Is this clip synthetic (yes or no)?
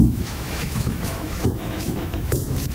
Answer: yes